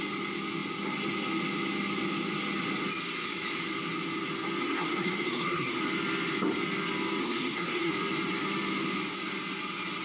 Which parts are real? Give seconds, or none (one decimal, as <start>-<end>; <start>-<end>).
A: 0.0-4.6; 5.8-7.2; 7.9-10.0